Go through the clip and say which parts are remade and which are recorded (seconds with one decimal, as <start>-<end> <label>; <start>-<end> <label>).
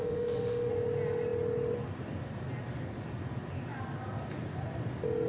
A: 0.0-0.7 remade; 0.7-5.3 recorded